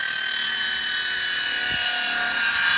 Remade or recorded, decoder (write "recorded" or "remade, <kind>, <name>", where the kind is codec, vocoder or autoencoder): recorded